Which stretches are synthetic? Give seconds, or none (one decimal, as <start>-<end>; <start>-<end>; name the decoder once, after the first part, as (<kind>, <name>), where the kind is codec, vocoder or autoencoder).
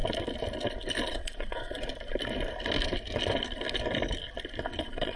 1.1-1.9 (vocoder, Vocos); 4.8-5.2